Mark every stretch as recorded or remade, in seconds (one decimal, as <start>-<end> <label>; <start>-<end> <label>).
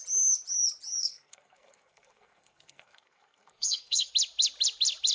0.0-1.0 recorded; 1.0-4.1 remade; 4.1-5.1 recorded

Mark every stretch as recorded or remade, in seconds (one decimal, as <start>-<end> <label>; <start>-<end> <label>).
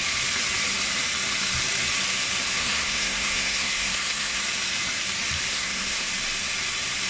0.0-2.6 recorded; 2.6-4.4 remade; 4.4-5.5 recorded; 5.5-6.1 remade; 6.1-7.1 recorded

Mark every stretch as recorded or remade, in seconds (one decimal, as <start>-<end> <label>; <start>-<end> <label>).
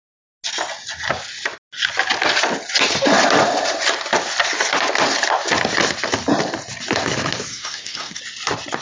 0.0-7.5 recorded; 7.5-8.2 remade; 8.2-8.8 recorded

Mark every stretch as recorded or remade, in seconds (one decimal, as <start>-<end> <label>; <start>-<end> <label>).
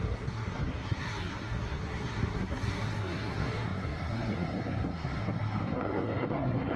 0.0-6.8 remade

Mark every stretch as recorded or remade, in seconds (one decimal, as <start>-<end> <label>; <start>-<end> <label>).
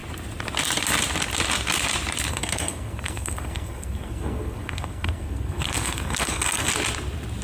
0.0-2.3 recorded; 2.3-6.7 remade; 6.7-7.4 recorded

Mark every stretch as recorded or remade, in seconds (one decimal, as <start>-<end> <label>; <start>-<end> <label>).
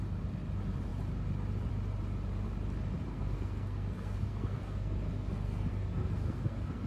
0.0-3.1 recorded; 3.1-6.9 remade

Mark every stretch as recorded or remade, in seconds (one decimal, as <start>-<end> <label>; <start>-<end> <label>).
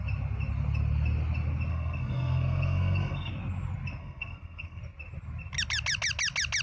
0.0-1.7 recorded; 1.7-3.3 remade; 3.3-4.0 recorded; 4.0-4.8 remade; 4.8-6.6 recorded